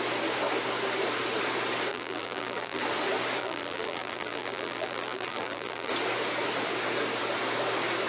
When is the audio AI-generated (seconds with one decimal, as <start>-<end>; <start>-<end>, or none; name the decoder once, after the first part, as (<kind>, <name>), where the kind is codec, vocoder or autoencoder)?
1.9-2.8 (vocoder, BigVGAN v2); 3.4-5.9